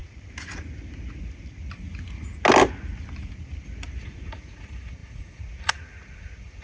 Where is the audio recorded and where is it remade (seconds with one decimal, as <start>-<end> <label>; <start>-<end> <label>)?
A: 0.0-4.0 recorded; 4.0-6.6 remade